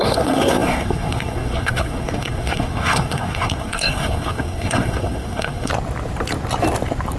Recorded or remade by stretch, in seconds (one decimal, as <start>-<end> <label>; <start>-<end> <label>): 0.0-5.7 remade; 5.7-7.2 recorded